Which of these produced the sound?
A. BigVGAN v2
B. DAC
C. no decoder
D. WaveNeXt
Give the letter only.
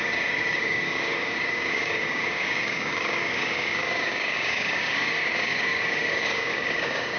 B